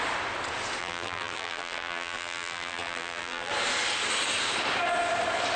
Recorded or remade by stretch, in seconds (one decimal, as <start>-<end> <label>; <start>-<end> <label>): 0.0-0.8 recorded; 0.8-3.5 remade; 3.5-5.6 recorded